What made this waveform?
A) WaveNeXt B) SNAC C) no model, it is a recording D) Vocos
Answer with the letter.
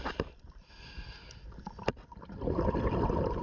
C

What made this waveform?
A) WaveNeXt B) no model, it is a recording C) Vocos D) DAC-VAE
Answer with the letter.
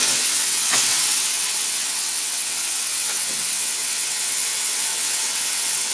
A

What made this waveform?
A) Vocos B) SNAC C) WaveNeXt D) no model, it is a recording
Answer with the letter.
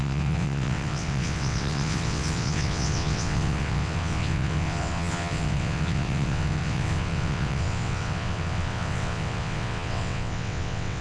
C